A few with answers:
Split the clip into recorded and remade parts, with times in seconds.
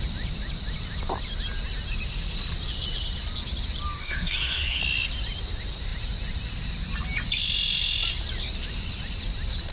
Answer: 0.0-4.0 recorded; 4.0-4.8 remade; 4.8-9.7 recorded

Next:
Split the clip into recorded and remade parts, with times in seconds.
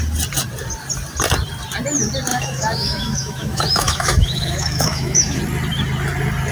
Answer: 0.0-2.3 recorded; 2.3-5.4 remade; 5.4-6.5 recorded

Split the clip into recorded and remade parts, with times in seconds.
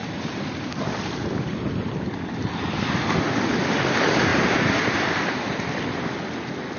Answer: 0.0-4.3 recorded; 4.3-5.6 remade; 5.6-6.8 recorded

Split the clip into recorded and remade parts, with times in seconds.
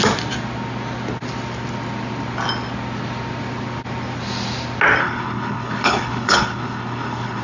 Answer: 0.0-5.0 recorded; 5.0-7.4 remade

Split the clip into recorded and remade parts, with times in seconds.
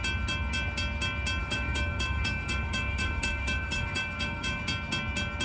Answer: 0.0-1.4 recorded; 1.4-4.6 remade; 4.6-5.4 recorded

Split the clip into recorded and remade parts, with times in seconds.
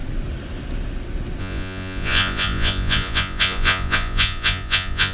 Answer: 0.0-1.4 recorded; 1.4-5.1 remade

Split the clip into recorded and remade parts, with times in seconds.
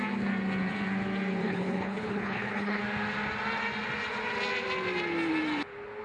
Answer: 0.0-1.4 recorded; 1.4-2.8 remade; 2.8-6.0 recorded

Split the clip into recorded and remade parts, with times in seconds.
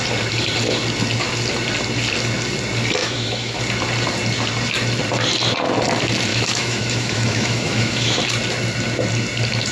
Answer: 0.0-3.0 recorded; 3.0-3.6 remade; 3.6-6.3 recorded; 6.3-8.2 remade; 8.2-9.7 recorded